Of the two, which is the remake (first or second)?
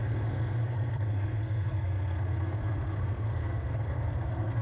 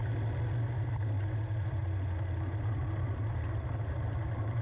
first